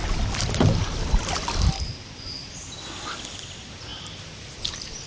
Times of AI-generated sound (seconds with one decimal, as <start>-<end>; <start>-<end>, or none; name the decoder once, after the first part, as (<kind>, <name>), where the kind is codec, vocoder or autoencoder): none

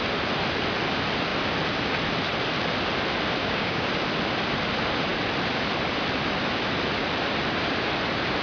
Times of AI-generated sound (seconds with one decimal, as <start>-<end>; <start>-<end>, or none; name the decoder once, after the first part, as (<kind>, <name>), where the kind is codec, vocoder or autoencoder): 3.4-3.9 (codec, DAC)

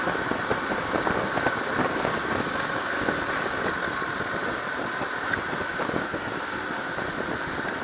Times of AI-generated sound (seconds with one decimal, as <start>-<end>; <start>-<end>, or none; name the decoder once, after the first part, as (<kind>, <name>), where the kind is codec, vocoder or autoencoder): 1.8-2.9 (codec, DAC); 5.8-6.4

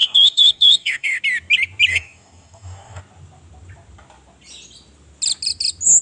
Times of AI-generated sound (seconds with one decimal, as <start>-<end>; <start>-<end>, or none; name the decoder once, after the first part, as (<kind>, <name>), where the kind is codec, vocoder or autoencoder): 0.0-1.2 (codec, DAC); 1.9-3.0

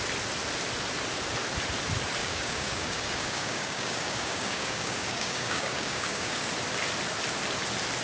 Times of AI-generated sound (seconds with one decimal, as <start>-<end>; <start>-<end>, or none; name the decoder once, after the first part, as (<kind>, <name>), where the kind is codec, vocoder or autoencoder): 2.2-6.5 (codec, DAC)